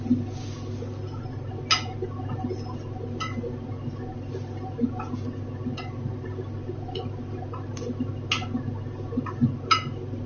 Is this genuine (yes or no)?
yes